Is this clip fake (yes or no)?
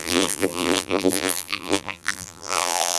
yes